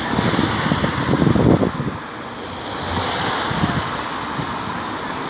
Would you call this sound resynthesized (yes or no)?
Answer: no